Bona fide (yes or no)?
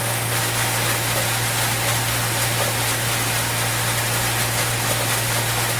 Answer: yes